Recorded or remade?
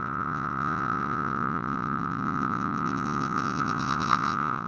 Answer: remade